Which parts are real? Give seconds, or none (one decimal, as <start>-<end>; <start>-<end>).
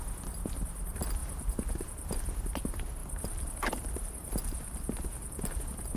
0.0-1.2; 2.1-3.0; 5.6-6.0